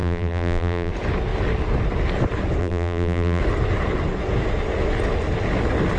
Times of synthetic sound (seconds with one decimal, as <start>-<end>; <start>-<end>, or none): 0.0-0.9; 2.6-3.4